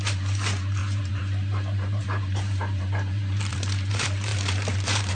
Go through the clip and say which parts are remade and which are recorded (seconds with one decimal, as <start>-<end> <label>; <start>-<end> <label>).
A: 0.0-5.1 remade

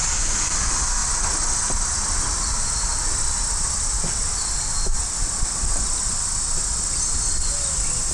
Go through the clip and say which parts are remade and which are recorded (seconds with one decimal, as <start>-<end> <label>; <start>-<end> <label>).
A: 0.0-5.0 recorded; 5.0-5.7 remade; 5.7-8.1 recorded